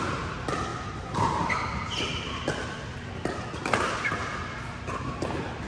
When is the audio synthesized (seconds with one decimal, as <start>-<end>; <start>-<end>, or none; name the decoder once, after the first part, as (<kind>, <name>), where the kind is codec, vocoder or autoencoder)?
none